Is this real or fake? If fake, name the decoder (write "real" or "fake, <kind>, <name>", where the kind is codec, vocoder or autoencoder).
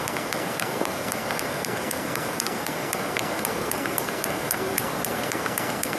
fake, codec, SNAC